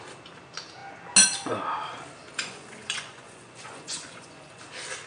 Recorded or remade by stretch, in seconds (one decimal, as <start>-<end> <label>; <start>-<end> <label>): 0.0-2.2 recorded; 2.2-4.6 remade; 4.6-5.1 recorded